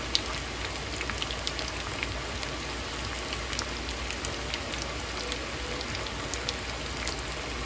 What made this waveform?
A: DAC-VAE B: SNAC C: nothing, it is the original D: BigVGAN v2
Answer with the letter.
C